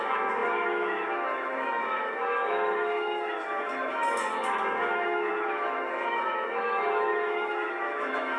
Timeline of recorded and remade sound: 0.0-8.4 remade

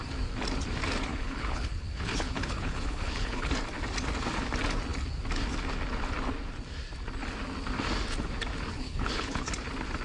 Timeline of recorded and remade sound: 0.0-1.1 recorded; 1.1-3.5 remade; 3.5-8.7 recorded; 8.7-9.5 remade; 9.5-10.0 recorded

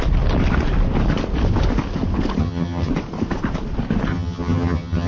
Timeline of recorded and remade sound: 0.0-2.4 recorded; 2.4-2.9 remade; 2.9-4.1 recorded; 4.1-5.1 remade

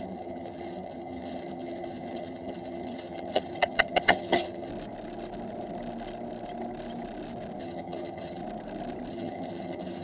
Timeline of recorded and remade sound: 0.0-4.7 remade; 4.7-7.6 recorded; 7.6-8.4 remade; 8.4-9.1 recorded; 9.1-10.0 remade

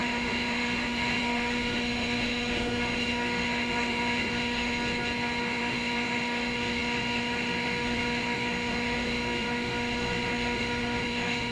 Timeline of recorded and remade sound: 0.0-4.7 remade; 4.7-5.4 recorded; 5.4-11.5 remade

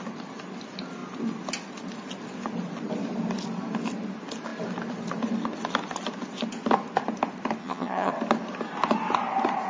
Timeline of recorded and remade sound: 0.0-7.6 recorded; 7.6-8.1 remade; 8.1-9.7 recorded

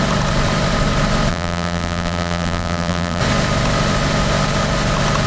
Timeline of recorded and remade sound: 0.0-1.3 recorded; 1.3-3.2 remade; 3.2-5.3 recorded

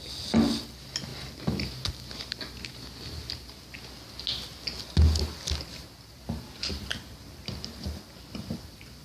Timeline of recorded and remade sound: 0.0-9.0 recorded